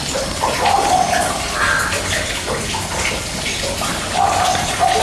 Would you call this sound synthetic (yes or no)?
no